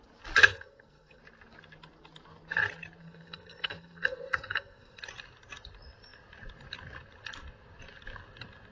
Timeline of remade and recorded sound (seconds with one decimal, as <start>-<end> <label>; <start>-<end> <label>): 0.0-0.4 recorded; 0.4-1.2 remade; 1.2-3.0 recorded; 3.0-5.0 remade; 5.0-8.7 recorded